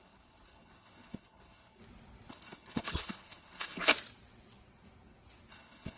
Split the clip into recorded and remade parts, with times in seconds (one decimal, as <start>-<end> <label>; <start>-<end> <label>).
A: 0.0-1.8 remade; 1.8-2.3 recorded; 2.3-3.9 remade; 3.9-5.5 recorded; 5.5-6.0 remade

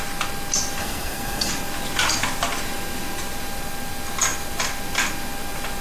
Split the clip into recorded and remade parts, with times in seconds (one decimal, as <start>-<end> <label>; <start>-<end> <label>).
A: 0.0-0.8 recorded; 0.8-1.5 remade; 1.5-5.8 recorded

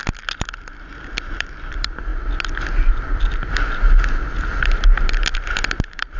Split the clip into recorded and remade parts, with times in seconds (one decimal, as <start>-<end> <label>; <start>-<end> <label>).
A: 0.0-0.6 recorded; 0.6-2.1 remade; 2.1-5.8 recorded; 5.8-6.2 remade